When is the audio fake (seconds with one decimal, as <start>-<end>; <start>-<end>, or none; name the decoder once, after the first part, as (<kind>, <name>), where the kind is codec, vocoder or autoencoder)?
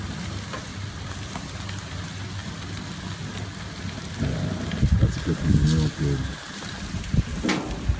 none